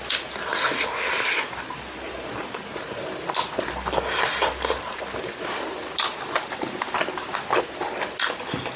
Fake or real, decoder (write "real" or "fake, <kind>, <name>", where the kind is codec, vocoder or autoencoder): real